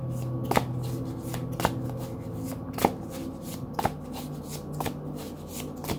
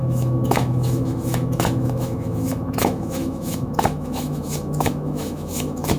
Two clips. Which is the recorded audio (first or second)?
first